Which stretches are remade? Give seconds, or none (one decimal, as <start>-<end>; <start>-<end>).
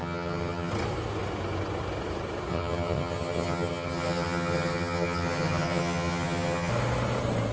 0.0-0.7; 2.5-6.7